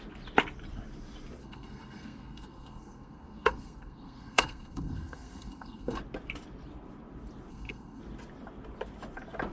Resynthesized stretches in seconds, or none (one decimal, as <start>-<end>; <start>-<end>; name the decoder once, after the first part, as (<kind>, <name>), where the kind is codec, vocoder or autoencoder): 1.4-6.0 (codec, SNAC); 7.5-8.0